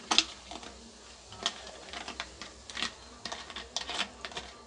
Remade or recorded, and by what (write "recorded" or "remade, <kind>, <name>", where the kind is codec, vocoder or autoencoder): recorded